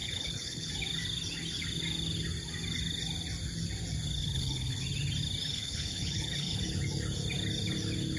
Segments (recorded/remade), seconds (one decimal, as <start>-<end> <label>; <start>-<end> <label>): 0.0-0.7 remade; 0.7-4.2 recorded; 4.2-4.8 remade; 4.8-5.5 recorded; 5.5-6.6 remade; 6.6-8.2 recorded